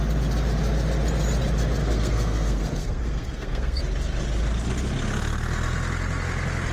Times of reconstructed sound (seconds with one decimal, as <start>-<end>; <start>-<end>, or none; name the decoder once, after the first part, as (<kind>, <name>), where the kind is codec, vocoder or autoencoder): 1.8-3.8 (codec, SNAC)